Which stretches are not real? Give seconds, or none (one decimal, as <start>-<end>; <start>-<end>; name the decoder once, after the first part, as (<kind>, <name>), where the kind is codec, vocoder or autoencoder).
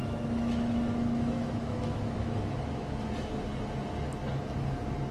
0.0-3.1 (autoencoder, DAC-VAE)